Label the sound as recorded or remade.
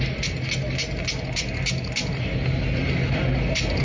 recorded